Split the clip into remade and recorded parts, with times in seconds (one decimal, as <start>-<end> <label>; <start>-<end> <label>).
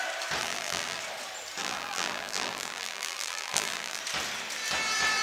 0.0-0.4 recorded; 0.4-1.0 remade; 1.0-1.6 recorded; 1.6-4.0 remade; 4.0-5.2 recorded